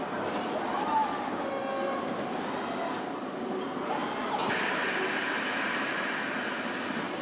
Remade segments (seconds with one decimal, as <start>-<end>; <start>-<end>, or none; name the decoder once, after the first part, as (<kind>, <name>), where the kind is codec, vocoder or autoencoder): none